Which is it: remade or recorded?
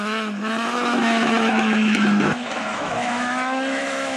remade